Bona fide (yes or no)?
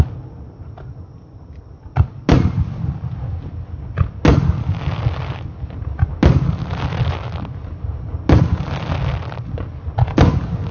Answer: yes